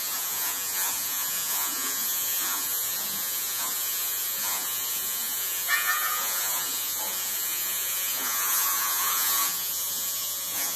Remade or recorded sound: remade